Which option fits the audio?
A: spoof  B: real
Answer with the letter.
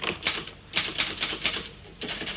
A